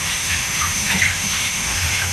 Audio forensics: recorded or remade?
remade